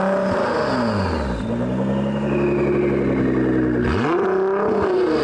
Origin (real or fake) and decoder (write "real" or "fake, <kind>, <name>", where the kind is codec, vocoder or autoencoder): real